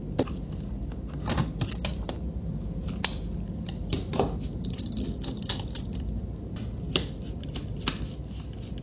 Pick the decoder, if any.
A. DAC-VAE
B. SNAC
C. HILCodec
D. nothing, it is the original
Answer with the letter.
D